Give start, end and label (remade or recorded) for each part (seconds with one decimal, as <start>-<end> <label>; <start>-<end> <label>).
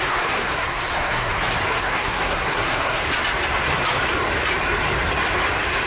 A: 0.0-1.3 remade; 1.3-1.8 recorded; 1.8-3.1 remade; 3.1-5.9 recorded